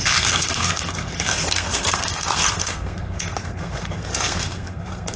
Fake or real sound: fake